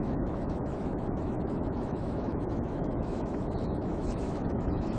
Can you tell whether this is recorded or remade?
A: remade